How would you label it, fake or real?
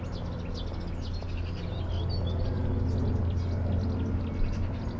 real